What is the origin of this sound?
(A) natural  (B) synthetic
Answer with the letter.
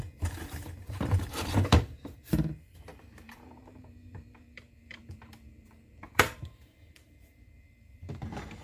B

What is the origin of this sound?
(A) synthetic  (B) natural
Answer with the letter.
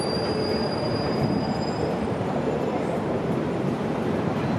A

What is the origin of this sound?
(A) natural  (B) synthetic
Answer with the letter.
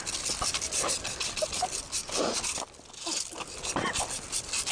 A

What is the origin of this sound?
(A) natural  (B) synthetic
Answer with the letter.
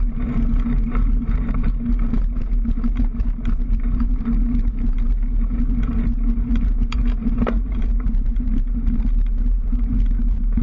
B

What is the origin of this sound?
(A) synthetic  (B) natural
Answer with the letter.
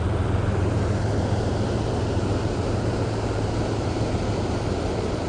A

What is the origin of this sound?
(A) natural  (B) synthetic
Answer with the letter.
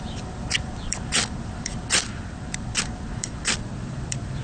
B